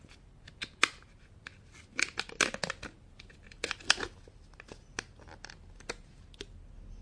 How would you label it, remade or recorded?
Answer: recorded